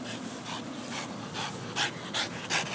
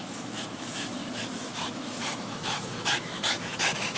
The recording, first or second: first